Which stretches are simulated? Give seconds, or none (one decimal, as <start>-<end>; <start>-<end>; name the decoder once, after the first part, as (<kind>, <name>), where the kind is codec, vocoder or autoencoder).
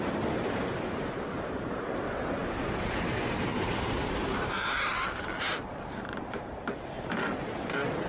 2.4-4.7 (vocoder, BigVGAN v2); 5.6-7.1